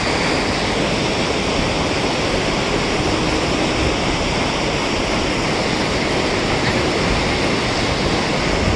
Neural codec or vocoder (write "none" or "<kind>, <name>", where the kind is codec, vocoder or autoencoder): none